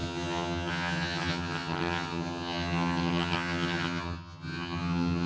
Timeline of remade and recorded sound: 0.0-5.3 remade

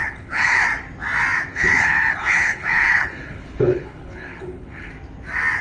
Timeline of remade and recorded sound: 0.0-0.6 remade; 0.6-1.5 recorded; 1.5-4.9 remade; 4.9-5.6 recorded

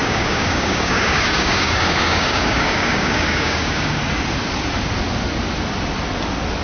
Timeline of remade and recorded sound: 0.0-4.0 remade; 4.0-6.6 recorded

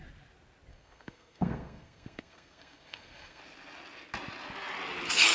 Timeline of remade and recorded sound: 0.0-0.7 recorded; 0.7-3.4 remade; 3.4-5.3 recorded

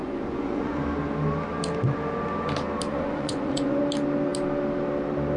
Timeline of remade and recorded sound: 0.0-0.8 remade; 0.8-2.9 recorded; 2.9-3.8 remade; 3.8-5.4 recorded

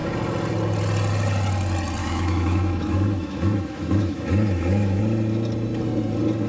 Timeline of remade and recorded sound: 0.0-2.0 recorded; 2.0-5.0 remade; 5.0-6.5 recorded

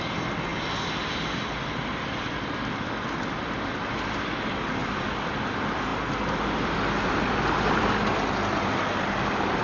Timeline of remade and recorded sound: 0.0-5.9 remade; 5.9-6.4 recorded; 6.4-9.6 remade